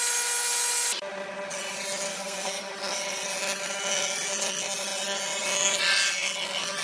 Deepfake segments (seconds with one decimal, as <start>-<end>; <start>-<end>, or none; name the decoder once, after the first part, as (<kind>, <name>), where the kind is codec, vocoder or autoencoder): 2.1-2.7 (codec, SNAC)